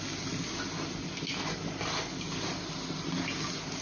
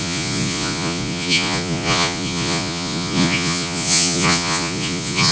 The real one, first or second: first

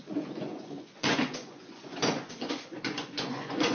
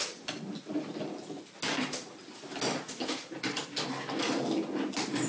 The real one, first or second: second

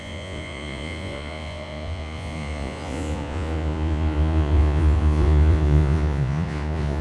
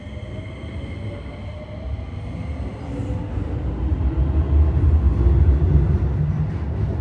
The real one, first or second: second